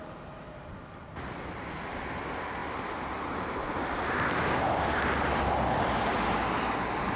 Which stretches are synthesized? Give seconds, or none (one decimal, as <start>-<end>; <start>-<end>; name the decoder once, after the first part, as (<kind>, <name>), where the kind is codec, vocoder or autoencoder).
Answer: none

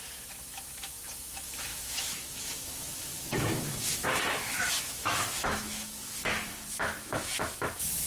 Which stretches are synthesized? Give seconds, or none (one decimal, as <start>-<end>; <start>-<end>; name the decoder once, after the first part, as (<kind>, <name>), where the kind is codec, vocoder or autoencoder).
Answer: 0.0-8.1 (autoencoder, DAC-VAE)

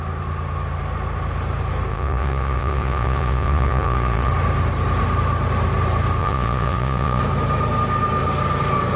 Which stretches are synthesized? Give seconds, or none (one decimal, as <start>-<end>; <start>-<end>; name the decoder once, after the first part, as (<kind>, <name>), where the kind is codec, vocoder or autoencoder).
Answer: 1.9-4.3 (vocoder, Vocos); 6.2-7.2

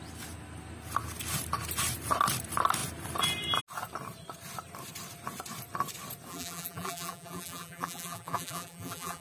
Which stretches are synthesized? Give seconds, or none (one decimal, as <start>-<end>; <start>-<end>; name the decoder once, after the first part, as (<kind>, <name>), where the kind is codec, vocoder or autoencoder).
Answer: 6.3-9.2 (vocoder, BigVGAN v2)

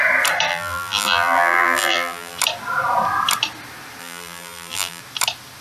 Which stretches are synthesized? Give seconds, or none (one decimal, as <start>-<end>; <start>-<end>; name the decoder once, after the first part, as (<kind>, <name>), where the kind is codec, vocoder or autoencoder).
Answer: 0.5-2.4 (vocoder, BigVGAN v2); 4.0-5.0

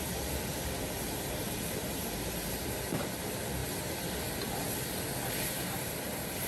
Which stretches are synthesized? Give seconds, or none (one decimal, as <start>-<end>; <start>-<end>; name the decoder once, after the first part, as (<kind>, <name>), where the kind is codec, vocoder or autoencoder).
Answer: 0.0-0.5 (vocoder, BigVGAN v2); 1.2-3.6; 5.3-6.5